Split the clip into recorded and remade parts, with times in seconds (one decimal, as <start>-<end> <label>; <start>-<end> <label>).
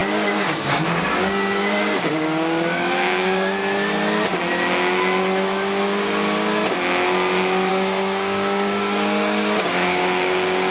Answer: 0.0-3.6 remade; 3.6-7.7 recorded; 7.7-10.7 remade